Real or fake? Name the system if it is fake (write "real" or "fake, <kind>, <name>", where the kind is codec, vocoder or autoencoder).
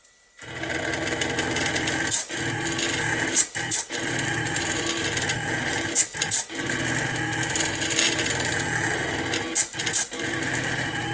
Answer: real